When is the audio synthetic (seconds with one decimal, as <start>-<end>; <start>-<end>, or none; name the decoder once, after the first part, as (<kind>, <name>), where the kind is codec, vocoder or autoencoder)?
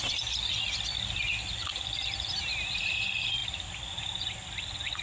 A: none